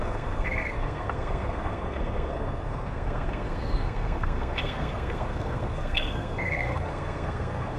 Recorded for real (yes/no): no